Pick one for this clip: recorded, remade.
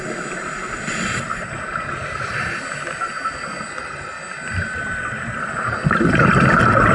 recorded